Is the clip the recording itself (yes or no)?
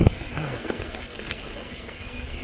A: no